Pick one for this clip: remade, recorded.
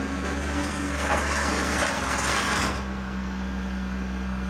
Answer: remade